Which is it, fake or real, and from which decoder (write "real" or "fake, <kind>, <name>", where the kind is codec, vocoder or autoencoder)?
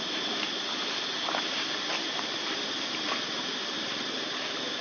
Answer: fake, vocoder, BigVGAN v2